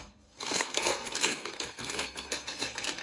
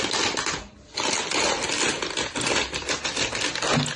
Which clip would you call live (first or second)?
second